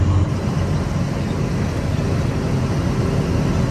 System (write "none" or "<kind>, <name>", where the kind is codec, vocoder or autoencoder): none